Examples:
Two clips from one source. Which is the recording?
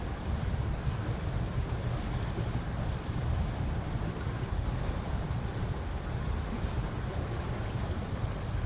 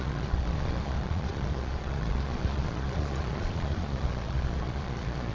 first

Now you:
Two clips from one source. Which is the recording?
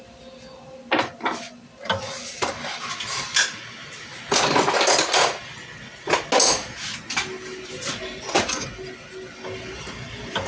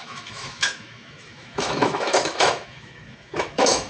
first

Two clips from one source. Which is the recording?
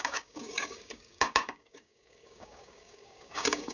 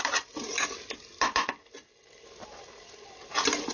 second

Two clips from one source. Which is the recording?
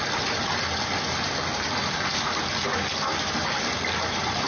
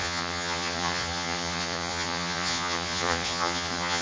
first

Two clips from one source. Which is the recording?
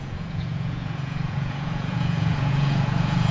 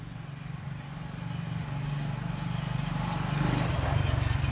second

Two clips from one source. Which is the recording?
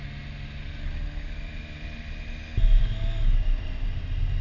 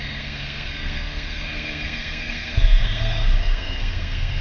first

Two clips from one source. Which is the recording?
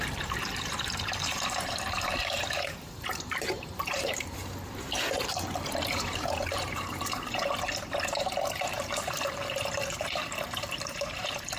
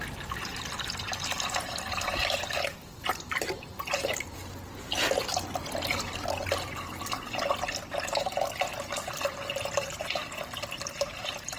second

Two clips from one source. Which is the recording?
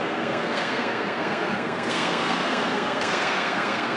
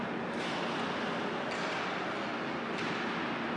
second